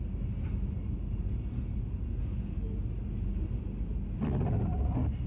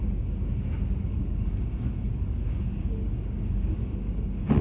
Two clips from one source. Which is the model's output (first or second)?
second